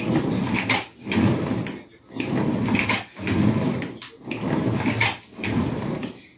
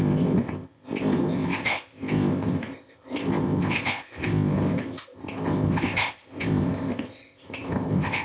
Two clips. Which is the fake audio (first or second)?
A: second